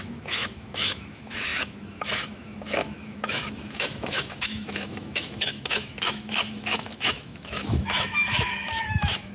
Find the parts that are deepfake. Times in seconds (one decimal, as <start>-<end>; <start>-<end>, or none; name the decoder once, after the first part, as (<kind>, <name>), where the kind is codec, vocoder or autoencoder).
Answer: 0.0-9.3 (autoencoder, DAC-VAE)